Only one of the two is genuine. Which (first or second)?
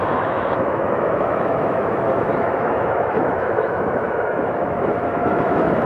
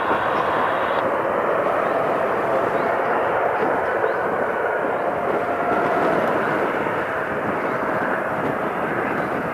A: second